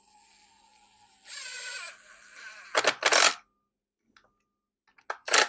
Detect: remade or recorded recorded